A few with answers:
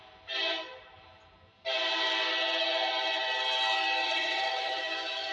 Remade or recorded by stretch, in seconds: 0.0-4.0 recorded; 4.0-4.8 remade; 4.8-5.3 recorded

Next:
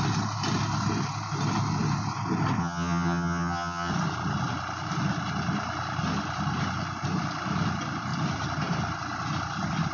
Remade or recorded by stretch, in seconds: 0.0-2.6 recorded; 2.6-3.9 remade; 3.9-9.9 recorded

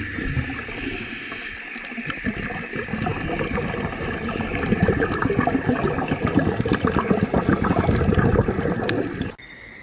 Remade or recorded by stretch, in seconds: 0.0-9.8 recorded

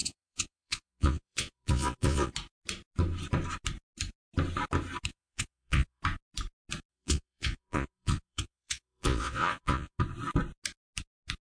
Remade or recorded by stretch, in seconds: 0.0-2.3 remade; 2.3-5.1 recorded; 5.1-6.0 remade; 6.0-6.9 recorded; 6.9-10.0 remade; 10.0-11.6 recorded

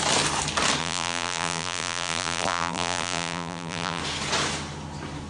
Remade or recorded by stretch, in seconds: 0.0-0.8 recorded; 0.8-4.0 remade; 4.0-5.3 recorded

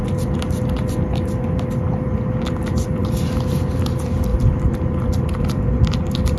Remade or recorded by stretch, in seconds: 0.0-6.4 recorded

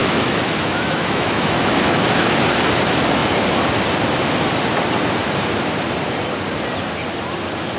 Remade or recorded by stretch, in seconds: 0.0-2.0 remade; 2.0-7.8 recorded

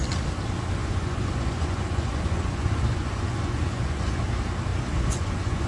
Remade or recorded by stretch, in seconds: 0.0-0.8 recorded; 0.8-4.2 remade; 4.2-4.7 recorded; 4.7-5.7 remade